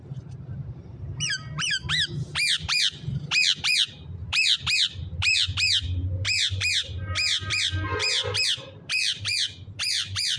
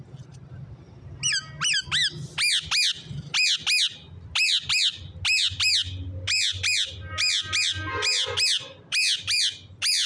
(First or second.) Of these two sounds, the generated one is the first